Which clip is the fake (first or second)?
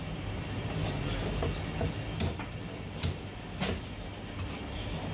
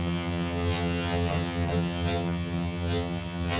second